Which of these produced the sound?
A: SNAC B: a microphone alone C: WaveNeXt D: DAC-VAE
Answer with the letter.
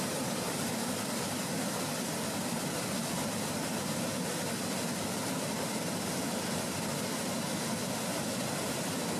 B